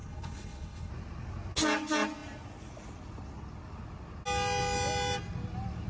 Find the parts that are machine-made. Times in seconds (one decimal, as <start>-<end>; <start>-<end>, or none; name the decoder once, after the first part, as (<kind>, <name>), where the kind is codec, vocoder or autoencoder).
0.0-0.9 (codec, HILCodec)